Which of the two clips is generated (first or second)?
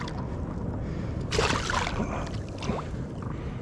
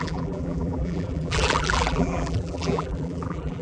second